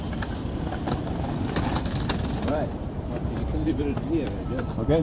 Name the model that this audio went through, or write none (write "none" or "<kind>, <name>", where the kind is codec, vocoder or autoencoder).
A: none